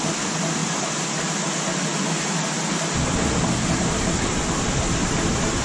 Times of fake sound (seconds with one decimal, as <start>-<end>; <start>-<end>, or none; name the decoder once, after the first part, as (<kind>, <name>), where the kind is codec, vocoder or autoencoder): none